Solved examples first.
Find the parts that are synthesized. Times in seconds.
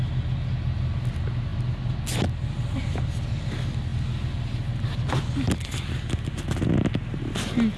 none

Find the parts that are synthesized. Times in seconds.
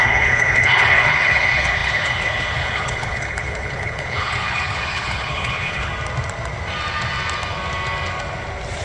0.0-5.9 (codec, HILCodec)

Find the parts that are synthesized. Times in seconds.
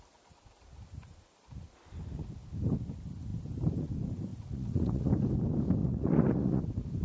4.3-5.1 (vocoder, Vocos); 5.8-6.6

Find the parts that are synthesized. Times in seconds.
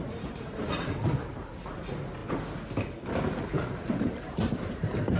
0.0-2.2 (vocoder, BigVGAN v2); 3.4-5.2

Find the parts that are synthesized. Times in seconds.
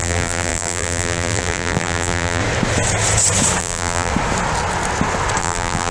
0.0-2.4 (vocoder, BigVGAN v2); 3.6-4.1; 5.4-5.9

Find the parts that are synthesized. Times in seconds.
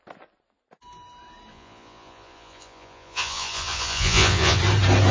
1.5-4.6 (vocoder, Vocos)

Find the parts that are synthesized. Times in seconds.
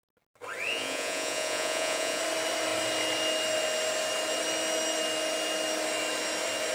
0.7-2.2 (vocoder, Vocos)